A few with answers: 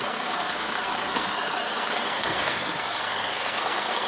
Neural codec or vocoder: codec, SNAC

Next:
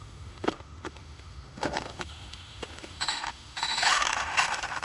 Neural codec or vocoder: autoencoder, DAC-VAE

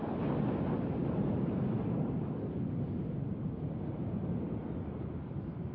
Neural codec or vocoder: none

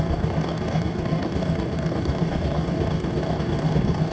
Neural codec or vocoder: codec, DAC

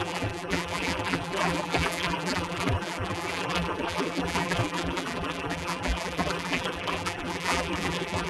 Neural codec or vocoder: vocoder, BigVGAN v2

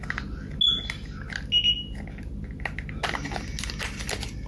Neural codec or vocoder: none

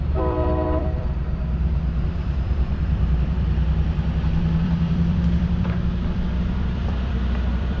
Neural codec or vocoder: vocoder, BigVGAN v2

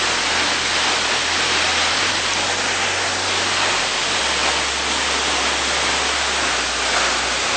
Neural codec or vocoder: none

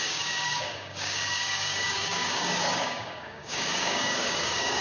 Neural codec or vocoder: codec, DAC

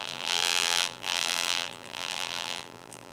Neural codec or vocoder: vocoder, BigVGAN v2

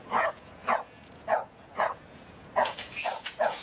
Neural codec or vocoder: vocoder, Vocos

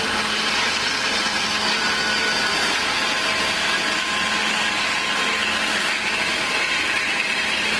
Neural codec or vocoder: none